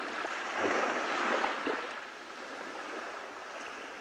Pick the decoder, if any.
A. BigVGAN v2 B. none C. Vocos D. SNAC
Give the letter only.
A